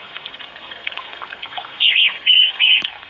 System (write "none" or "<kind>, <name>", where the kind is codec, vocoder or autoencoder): codec, SNAC